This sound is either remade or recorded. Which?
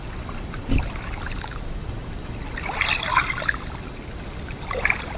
recorded